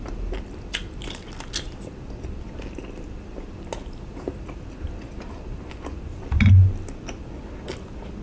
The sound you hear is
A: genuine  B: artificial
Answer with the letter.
A